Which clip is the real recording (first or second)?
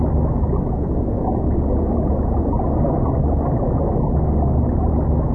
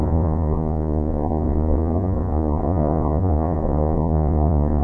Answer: first